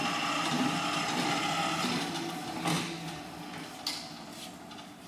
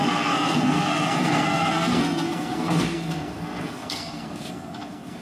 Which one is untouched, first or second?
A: first